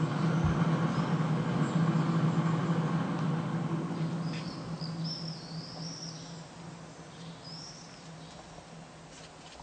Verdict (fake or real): real